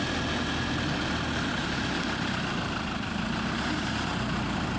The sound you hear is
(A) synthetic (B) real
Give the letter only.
B